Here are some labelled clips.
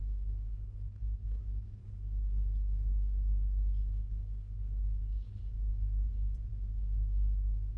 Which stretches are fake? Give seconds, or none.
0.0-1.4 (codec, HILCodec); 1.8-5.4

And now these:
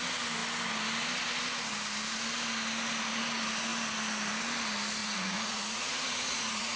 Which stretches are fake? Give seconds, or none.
5.0-6.8 (vocoder, Vocos)